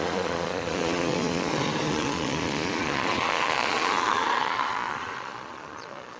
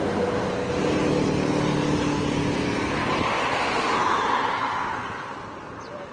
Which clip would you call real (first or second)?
second